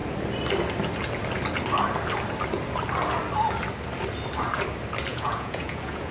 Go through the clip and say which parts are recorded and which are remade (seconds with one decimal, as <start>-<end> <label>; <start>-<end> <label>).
0.0-5.1 recorded; 5.1-6.1 remade